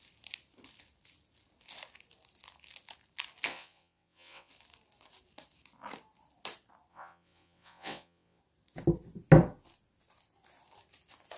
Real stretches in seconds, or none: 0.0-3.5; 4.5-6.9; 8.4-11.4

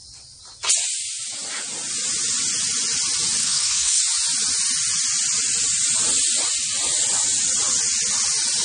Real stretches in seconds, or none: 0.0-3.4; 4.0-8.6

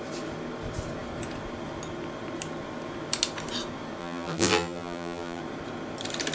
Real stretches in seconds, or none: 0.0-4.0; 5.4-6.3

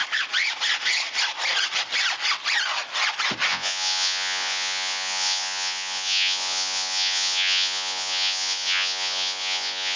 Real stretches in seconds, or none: 0.0-3.5